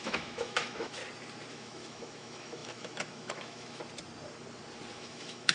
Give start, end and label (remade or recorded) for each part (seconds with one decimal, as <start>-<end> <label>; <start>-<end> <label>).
0.0-1.0 remade; 1.0-1.5 recorded; 1.5-3.8 remade; 3.8-4.9 recorded; 4.9-5.5 remade